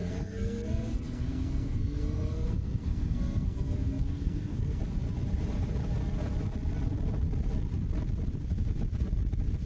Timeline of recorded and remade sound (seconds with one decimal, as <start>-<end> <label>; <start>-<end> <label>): 0.0-4.8 remade; 4.8-9.7 recorded

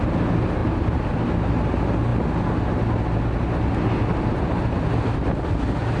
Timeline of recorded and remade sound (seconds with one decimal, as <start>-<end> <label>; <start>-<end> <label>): 0.0-6.0 recorded